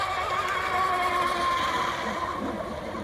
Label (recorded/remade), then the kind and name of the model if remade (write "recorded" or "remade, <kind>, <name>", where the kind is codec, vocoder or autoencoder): recorded